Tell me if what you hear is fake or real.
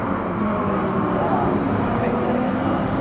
fake